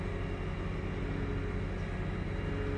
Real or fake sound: real